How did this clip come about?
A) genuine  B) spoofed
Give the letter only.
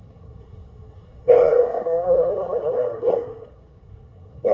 B